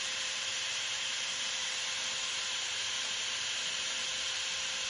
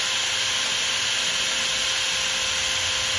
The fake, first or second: first